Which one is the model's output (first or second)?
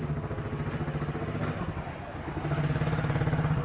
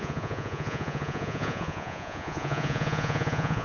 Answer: second